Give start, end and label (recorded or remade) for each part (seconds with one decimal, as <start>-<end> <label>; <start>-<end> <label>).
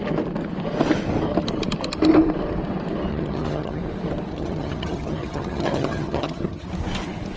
0.0-3.1 recorded; 3.1-3.8 remade; 3.8-4.3 recorded; 4.3-6.7 remade; 6.7-7.4 recorded